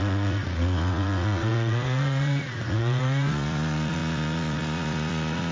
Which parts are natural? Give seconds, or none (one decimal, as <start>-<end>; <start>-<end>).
none

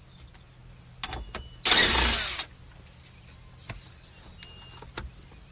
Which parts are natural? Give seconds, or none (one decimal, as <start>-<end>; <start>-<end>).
0.0-5.5

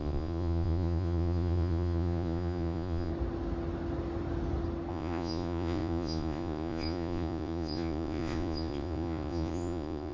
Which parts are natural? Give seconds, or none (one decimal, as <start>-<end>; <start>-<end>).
3.1-4.9

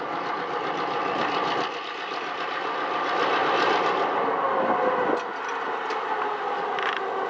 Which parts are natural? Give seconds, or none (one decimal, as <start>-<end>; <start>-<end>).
0.0-7.3

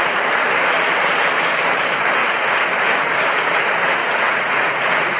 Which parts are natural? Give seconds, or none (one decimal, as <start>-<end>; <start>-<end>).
0.0-2.2; 2.7-4.0